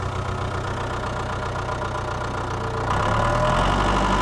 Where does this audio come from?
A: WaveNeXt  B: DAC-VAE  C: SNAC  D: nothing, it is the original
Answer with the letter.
D